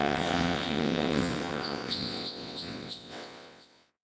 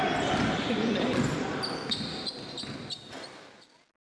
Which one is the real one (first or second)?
second